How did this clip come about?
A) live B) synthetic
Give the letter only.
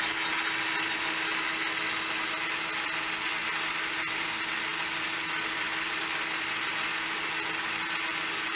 A